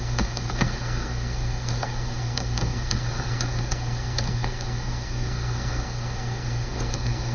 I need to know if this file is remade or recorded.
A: remade